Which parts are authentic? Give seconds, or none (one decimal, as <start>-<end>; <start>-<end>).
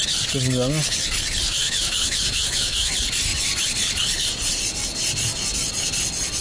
0.0-1.6; 2.9-6.4